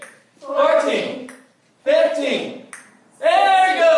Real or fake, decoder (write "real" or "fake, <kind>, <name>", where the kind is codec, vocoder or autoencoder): real